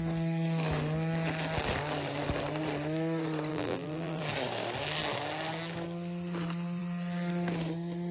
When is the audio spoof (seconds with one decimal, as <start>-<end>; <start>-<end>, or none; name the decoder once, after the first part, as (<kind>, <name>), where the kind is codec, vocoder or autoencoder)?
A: 3.5-4.2 (vocoder, BigVGAN v2)